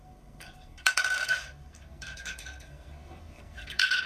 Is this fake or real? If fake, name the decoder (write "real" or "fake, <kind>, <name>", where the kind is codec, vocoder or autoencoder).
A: fake, codec, SNAC